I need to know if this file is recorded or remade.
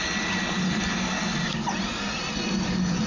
recorded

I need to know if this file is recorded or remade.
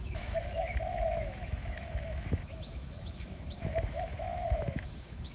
remade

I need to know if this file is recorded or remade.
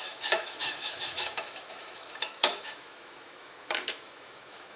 remade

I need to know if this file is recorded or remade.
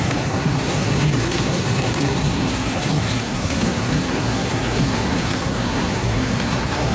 remade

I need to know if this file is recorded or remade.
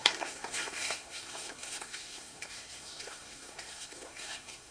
remade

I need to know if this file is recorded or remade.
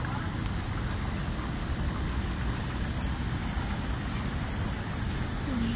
recorded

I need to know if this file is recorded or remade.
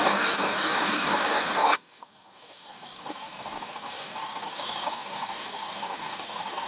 remade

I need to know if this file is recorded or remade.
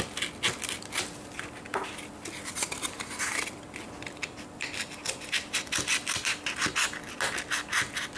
recorded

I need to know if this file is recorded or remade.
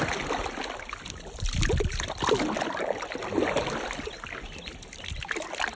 recorded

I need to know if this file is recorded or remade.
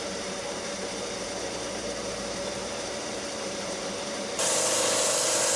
remade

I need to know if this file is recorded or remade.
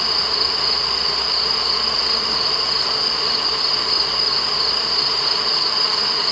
recorded